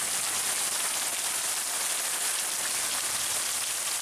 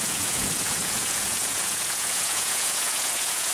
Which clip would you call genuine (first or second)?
first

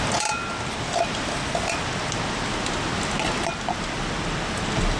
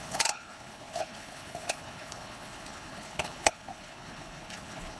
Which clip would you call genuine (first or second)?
first